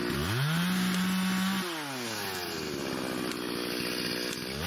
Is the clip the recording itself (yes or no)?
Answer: yes